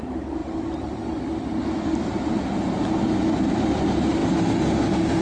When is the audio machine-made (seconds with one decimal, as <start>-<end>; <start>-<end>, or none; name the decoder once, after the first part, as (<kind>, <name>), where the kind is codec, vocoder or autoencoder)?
none

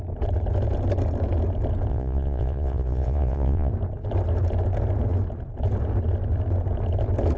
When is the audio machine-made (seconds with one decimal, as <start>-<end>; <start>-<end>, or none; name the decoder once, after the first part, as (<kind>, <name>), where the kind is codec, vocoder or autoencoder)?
1.9-3.7 (vocoder, Vocos)

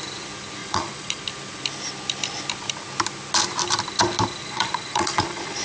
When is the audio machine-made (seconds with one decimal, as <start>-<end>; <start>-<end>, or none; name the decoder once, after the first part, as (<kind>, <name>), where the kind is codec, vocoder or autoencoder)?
0.6-1.2 (vocoder, Vocos); 4.4-5.6

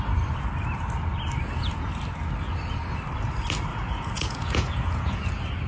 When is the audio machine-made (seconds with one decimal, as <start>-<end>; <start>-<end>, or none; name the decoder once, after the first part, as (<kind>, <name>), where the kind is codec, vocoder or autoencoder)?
3.7-5.3 (vocoder, Vocos)

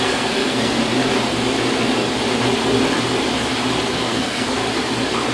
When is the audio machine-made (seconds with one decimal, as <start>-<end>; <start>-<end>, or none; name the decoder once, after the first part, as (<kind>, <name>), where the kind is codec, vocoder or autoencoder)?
0.0-0.8 (codec, SNAC); 3.9-4.6

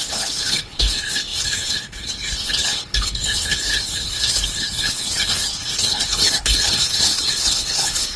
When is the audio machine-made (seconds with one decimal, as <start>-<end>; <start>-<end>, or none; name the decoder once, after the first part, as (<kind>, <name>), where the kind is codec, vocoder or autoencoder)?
0.0-8.2 (codec, HILCodec)

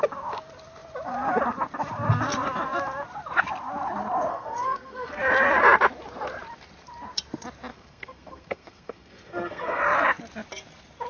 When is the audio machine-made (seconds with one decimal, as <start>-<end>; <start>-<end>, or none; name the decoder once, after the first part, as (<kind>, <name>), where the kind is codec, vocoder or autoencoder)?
4.3-5.2 (codec, SNAC); 7.7-9.8